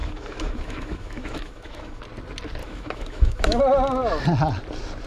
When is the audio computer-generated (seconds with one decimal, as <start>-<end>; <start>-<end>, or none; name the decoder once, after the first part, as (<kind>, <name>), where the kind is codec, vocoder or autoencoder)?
0.0-2.0 (autoencoder, DAC-VAE); 2.6-3.6